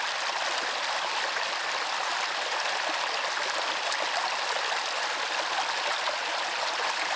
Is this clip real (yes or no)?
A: yes